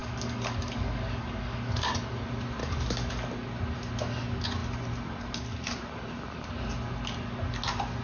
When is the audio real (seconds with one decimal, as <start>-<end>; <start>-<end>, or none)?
1.6-2.6; 3.3-8.0